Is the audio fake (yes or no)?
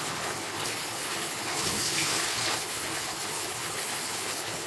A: yes